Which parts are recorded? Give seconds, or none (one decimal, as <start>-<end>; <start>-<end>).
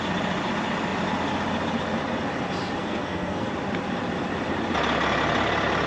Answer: 0.0-2.8; 3.5-5.9